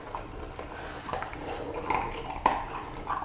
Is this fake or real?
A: real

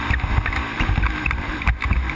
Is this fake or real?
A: fake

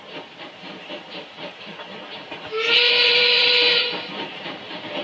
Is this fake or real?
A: fake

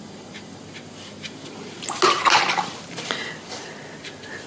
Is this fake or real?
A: real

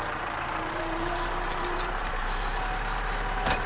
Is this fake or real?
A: fake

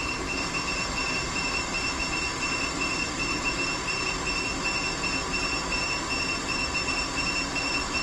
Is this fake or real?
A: fake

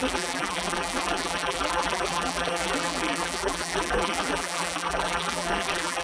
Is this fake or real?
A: fake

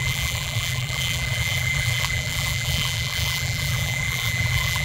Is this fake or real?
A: fake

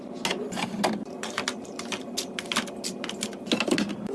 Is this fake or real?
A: real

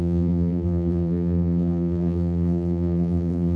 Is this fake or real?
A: fake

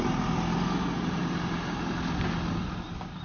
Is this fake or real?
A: real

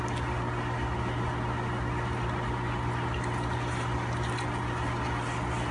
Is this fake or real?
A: real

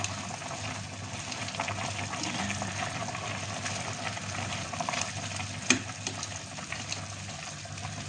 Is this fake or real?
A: real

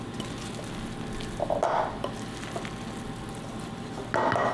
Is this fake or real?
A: real